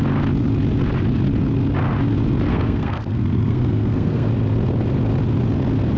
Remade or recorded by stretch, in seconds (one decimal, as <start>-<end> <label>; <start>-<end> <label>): 0.0-2.5 recorded; 2.5-4.3 remade; 4.3-6.0 recorded

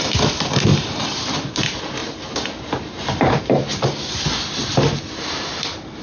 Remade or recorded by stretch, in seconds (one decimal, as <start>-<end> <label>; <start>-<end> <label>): 0.0-0.7 recorded; 0.7-1.5 remade; 1.5-2.0 recorded; 2.0-3.4 remade; 3.4-6.0 recorded

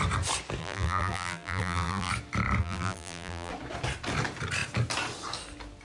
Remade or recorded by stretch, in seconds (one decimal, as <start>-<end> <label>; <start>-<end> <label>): 0.0-0.6 recorded; 0.6-2.1 remade; 2.1-2.6 recorded; 2.6-3.5 remade; 3.5-5.8 recorded

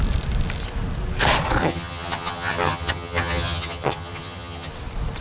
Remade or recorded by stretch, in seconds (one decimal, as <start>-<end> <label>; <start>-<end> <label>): 0.0-1.6 recorded; 1.6-4.7 remade; 4.7-5.2 recorded

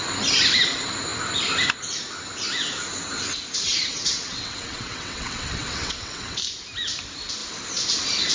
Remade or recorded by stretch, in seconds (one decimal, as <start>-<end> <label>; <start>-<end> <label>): 0.0-3.9 recorded; 3.9-6.4 remade; 6.4-8.3 recorded

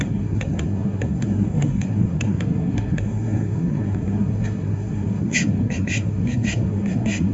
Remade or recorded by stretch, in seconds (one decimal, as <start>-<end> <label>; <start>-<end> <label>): 0.0-7.3 remade